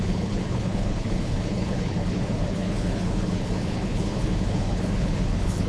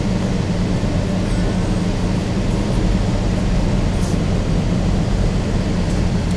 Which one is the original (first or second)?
second